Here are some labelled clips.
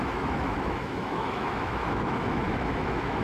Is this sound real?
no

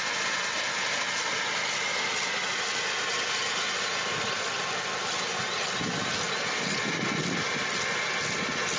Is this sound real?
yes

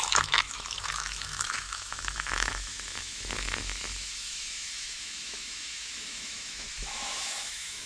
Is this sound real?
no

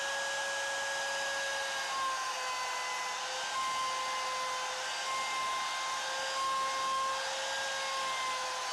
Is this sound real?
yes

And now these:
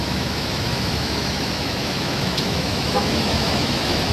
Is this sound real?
no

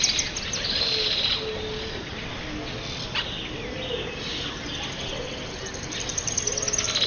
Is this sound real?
yes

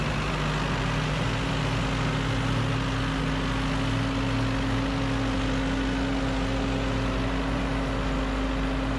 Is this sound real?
yes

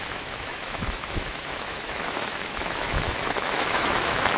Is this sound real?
no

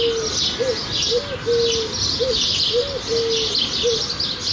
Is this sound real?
yes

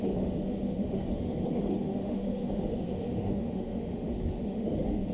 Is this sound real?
no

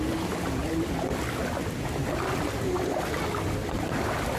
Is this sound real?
yes